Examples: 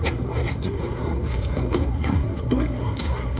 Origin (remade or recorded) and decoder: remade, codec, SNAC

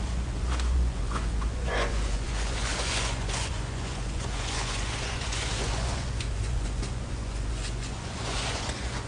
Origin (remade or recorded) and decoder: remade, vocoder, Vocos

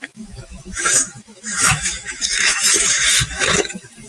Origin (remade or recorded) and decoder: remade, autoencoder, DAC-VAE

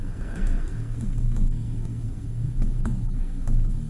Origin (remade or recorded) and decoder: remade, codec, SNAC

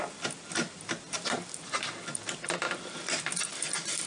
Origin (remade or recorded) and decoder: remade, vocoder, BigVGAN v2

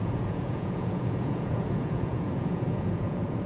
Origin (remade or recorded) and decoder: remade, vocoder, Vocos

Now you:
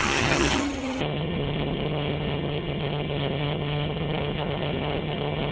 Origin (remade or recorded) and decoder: remade, vocoder, HiFi-GAN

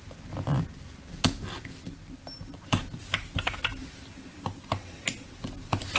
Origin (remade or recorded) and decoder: recorded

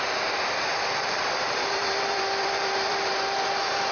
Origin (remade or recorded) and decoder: remade, vocoder, BigVGAN v2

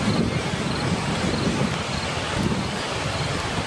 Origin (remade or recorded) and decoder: recorded